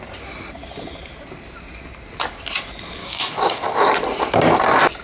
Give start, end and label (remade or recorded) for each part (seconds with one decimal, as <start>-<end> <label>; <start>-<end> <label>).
0.0-3.0 recorded; 3.0-3.9 remade; 3.9-5.0 recorded